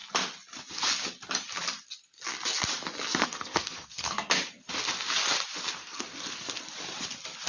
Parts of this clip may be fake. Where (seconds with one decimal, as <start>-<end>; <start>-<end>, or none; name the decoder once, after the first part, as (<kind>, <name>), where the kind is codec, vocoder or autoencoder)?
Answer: 3.2-4.3 (codec, SNAC); 5.8-6.6